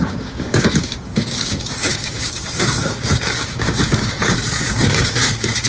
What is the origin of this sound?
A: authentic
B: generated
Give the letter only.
B